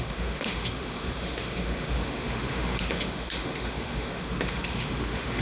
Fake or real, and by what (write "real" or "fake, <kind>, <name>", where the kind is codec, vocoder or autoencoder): fake, autoencoder, DAC-VAE